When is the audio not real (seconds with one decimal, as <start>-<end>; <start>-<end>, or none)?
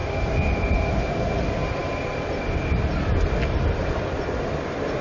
none